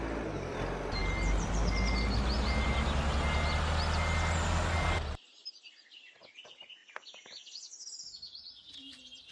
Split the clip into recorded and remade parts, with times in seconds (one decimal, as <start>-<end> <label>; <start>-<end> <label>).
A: 0.0-9.3 recorded